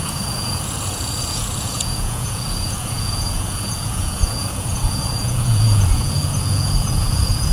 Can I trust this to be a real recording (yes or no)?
no